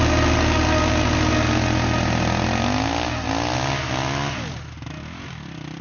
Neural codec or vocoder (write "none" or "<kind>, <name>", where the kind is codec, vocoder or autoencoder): none